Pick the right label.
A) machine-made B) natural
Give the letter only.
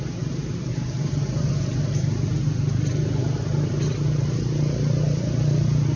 B